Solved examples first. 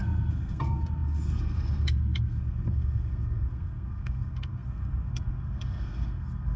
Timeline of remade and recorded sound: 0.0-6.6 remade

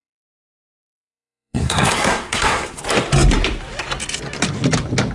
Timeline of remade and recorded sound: 0.0-2.8 remade; 2.8-5.1 recorded

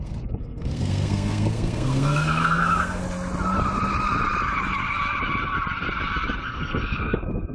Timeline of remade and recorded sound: 0.0-3.0 remade; 3.0-6.4 recorded; 6.4-7.5 remade

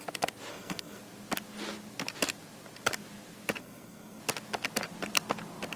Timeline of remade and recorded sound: 0.0-0.5 recorded; 0.5-1.0 remade; 1.0-3.6 recorded; 3.6-4.2 remade; 4.2-5.8 recorded

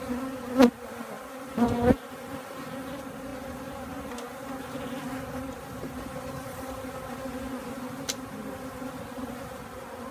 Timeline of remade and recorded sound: 0.0-10.1 recorded